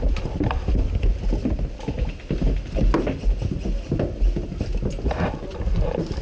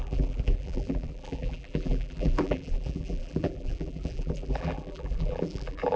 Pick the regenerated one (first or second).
second